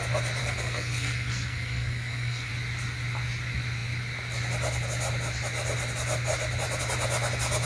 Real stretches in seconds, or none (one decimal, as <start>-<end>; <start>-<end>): 0.0-0.4; 2.5-7.7